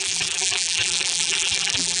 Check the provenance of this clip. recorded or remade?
remade